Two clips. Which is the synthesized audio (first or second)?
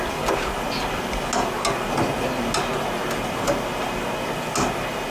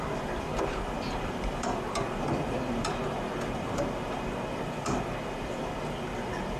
second